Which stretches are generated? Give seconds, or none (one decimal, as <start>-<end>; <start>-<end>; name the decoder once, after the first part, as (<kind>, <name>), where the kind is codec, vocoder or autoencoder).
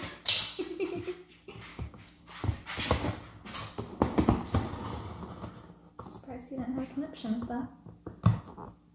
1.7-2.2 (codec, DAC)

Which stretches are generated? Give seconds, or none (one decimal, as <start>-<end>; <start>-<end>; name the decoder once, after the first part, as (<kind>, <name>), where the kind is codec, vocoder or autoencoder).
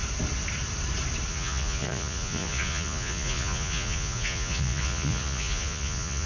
1.3-6.3 (vocoder, Vocos)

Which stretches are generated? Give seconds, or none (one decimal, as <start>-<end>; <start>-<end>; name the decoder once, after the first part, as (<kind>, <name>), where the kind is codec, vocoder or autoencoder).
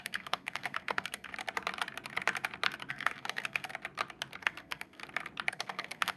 0.0-1.3 (codec, SNAC); 2.9-3.7; 4.4-5.0; 5.5-6.2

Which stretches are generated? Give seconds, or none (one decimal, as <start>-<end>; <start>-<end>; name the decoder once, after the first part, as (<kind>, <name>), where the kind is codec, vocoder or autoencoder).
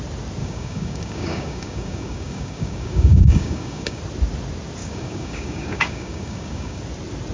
0.4-4.0 (codec, DAC); 4.8-6.8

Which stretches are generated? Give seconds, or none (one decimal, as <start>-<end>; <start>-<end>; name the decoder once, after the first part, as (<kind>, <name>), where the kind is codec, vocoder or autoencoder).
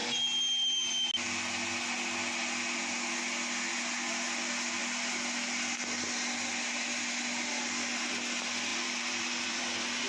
8.7-9.6 (vocoder, BigVGAN v2)